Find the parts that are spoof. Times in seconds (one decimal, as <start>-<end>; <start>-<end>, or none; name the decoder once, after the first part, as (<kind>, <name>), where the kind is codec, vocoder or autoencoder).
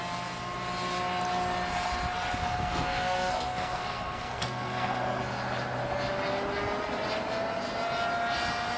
2.4-5.2 (codec, SNAC)